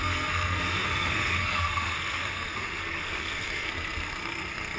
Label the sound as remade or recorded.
remade